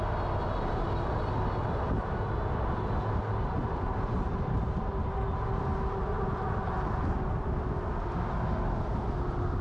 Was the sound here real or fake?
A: real